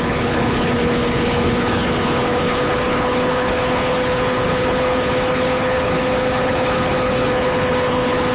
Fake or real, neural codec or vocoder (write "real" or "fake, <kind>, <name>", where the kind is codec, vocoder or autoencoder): fake, codec, HILCodec